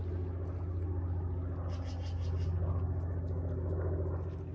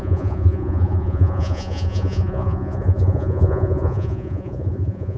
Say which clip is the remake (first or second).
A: second